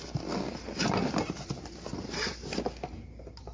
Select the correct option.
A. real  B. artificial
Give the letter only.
A